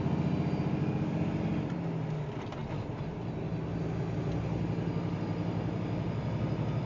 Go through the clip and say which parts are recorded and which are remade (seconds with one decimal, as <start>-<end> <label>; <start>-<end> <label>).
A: 0.0-0.8 recorded; 0.8-1.4 remade; 1.4-6.9 recorded